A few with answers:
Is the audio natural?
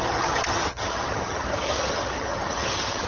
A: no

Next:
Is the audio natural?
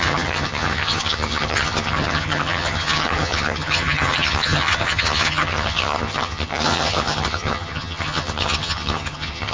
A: no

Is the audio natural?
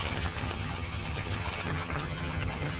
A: no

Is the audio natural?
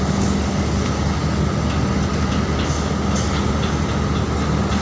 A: yes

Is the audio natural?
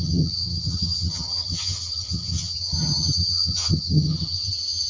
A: no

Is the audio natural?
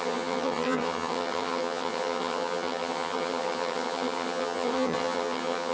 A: no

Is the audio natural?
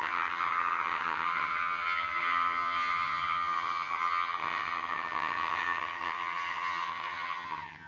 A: no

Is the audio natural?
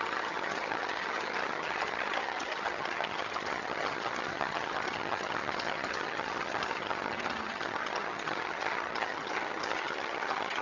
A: no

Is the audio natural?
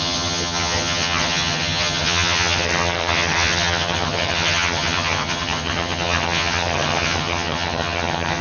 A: no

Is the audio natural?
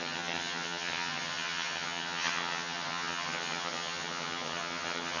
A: no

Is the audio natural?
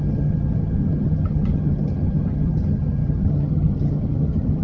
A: no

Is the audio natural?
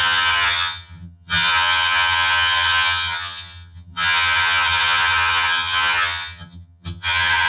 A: no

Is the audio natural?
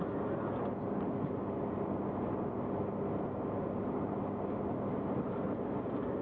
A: yes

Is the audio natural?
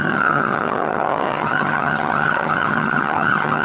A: no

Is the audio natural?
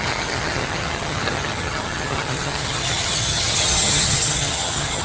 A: no